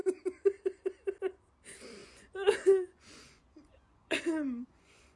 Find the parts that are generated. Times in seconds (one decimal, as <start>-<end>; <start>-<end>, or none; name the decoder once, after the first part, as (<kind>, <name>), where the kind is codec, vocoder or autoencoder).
2.0-5.2 (vocoder, Vocos)